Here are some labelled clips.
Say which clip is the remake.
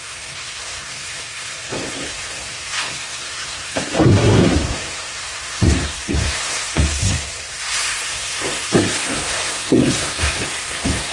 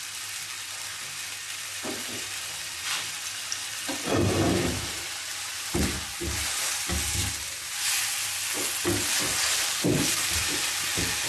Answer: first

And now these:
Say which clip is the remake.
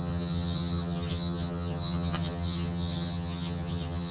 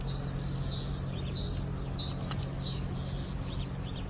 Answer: first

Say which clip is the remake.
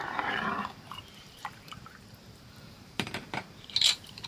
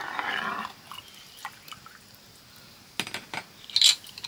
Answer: first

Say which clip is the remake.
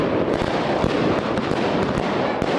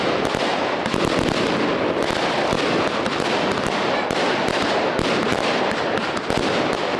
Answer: first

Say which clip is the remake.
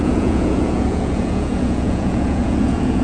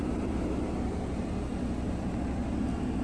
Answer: first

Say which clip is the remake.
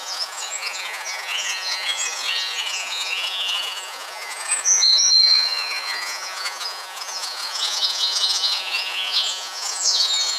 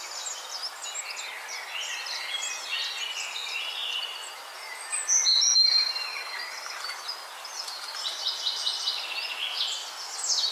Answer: first